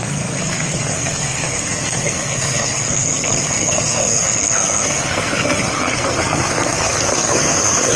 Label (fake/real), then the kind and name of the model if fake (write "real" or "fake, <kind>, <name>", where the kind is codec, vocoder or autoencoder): fake, codec, SNAC